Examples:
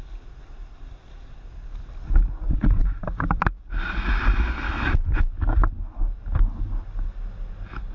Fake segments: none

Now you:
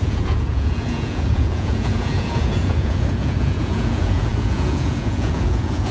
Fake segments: 0.0-5.9 (vocoder, Vocos)

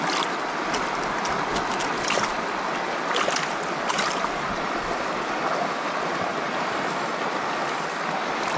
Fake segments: none

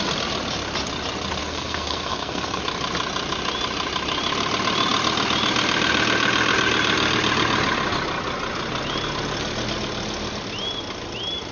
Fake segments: 1.4-2.6 (codec, SNAC)